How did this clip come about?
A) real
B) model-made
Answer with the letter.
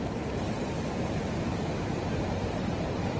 A